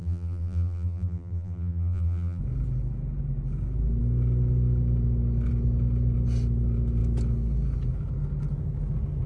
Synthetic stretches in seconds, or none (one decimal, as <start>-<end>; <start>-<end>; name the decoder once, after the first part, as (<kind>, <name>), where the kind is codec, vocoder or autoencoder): 0.0-2.4 (vocoder, BigVGAN v2)